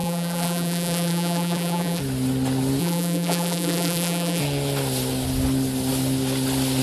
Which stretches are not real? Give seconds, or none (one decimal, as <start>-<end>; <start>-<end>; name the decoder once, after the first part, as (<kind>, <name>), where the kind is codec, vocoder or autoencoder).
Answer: 0.0-2.0 (vocoder, BigVGAN v2); 2.8-4.4